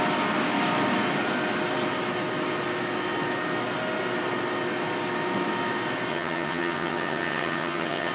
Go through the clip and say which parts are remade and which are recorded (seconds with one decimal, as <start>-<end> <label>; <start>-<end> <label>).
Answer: 0.0-6.1 recorded; 6.1-8.1 remade